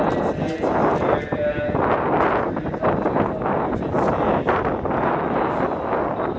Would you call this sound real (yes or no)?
yes